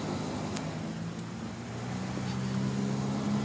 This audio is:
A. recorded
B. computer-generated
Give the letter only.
A